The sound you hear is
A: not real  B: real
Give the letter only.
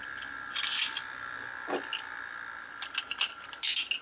B